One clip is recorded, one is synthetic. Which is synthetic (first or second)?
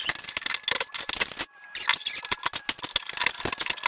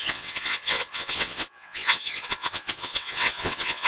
second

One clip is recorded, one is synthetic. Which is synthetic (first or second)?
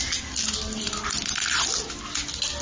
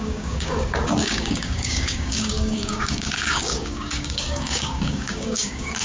second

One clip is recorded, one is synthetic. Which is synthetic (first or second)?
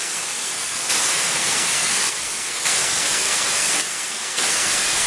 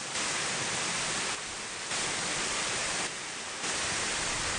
first